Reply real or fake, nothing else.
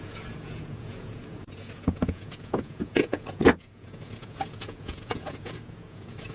fake